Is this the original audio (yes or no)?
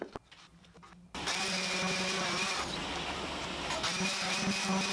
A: yes